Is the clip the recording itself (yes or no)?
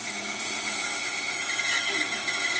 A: yes